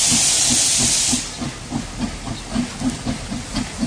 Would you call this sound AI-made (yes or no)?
no